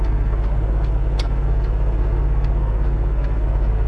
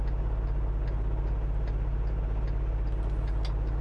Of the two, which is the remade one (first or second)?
first